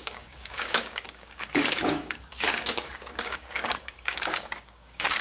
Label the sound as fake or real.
fake